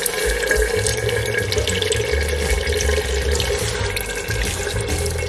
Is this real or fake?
real